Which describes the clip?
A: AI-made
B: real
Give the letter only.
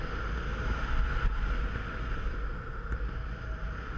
B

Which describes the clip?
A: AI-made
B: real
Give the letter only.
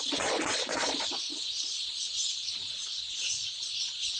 A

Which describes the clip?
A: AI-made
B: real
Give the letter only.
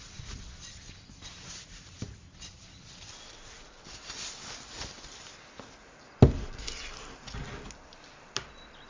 B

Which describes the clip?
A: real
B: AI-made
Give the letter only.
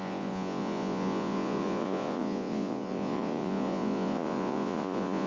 B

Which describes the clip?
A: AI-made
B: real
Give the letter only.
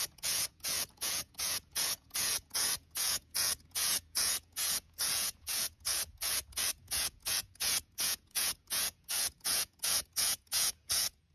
A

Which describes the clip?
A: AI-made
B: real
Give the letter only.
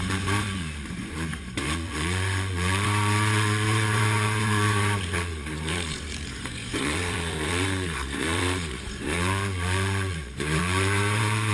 A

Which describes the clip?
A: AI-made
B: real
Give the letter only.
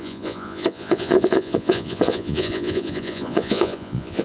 A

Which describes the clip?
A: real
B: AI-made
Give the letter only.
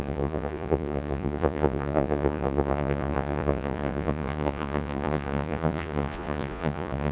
B